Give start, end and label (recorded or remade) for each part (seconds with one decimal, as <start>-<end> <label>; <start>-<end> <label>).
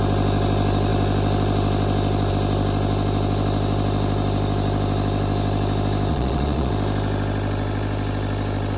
0.0-6.1 recorded; 6.1-6.7 remade; 6.7-8.8 recorded